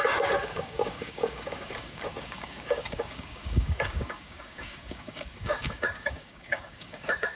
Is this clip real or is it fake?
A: fake